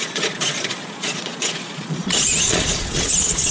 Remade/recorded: remade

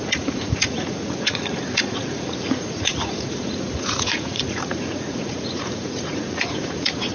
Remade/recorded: remade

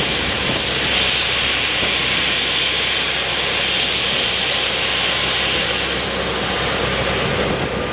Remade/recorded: recorded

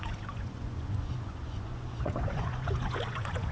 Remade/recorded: remade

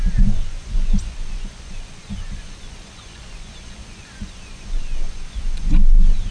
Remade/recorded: remade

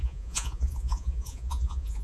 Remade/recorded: remade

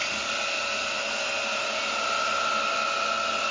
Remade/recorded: recorded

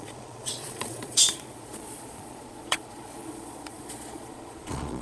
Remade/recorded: remade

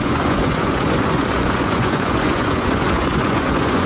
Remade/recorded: remade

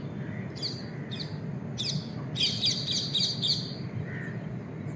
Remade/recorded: recorded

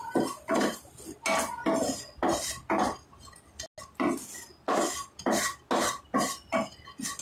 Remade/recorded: recorded